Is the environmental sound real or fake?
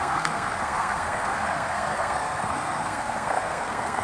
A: fake